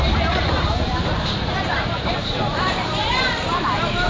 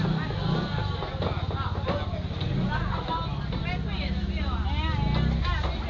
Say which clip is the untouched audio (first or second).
second